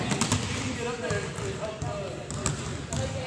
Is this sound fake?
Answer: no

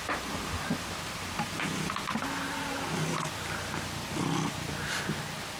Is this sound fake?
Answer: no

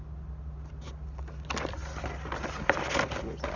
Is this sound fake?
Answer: no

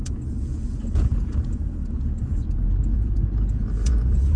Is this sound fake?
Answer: yes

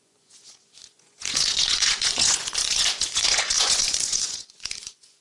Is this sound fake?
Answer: yes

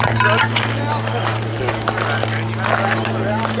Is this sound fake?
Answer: no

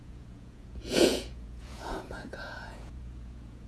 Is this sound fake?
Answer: yes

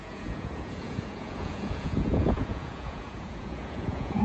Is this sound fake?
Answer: yes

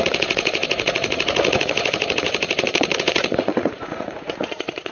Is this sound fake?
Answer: yes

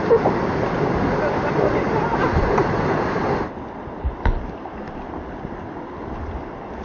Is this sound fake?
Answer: no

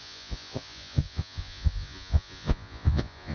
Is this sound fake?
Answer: yes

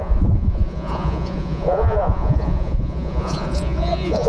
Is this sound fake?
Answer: yes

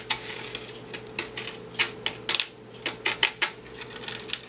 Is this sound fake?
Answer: no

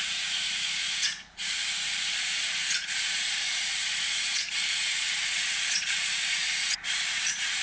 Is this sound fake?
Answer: yes